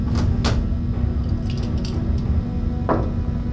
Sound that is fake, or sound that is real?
real